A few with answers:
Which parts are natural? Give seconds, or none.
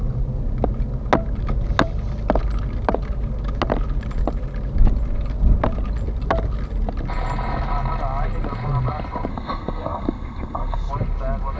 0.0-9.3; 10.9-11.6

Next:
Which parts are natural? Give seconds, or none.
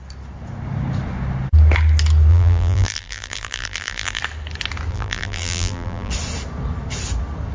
0.0-2.3; 4.2-4.9; 6.1-7.5